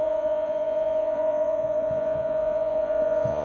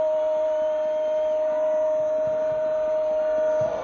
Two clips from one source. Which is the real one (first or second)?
second